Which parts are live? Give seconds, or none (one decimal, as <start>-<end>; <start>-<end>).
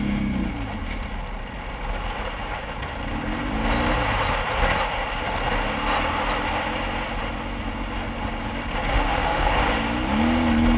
0.0-8.9; 9.5-10.8